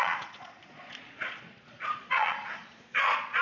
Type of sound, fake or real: fake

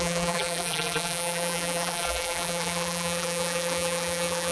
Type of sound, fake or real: fake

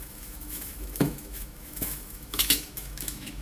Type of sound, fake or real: fake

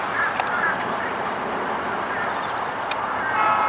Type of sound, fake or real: real